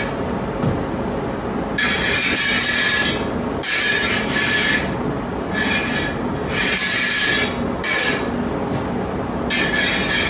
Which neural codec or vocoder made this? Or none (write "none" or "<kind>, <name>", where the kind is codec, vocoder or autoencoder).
none